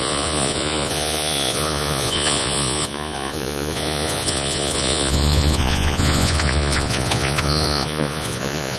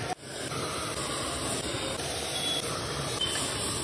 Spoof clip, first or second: first